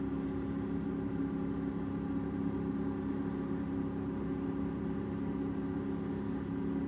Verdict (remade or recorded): recorded